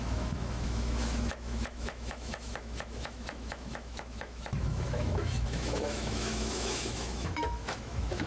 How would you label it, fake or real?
fake